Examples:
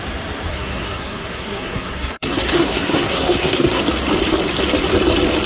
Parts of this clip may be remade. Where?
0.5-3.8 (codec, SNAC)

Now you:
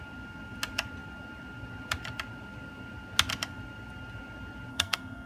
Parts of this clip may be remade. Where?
4.7-5.3 (codec, SNAC)

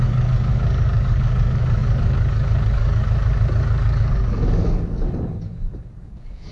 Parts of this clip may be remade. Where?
0.0-6.5 (codec, DAC)